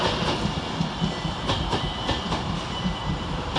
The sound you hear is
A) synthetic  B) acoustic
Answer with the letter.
B